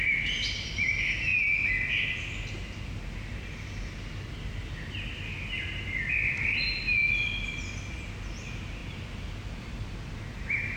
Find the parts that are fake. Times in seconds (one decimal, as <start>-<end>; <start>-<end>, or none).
none